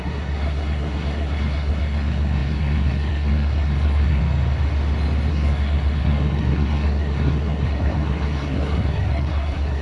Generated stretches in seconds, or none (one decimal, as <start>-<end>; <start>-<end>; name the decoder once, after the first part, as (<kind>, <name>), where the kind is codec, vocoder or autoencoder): 0.0-4.2 (codec, SNAC); 5.3-9.8